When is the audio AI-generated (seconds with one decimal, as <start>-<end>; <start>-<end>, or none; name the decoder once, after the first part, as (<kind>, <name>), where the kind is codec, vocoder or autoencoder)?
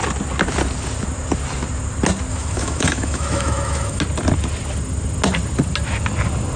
2.3-4.0 (autoencoder, DAC-VAE)